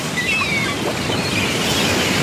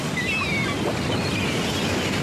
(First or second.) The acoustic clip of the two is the second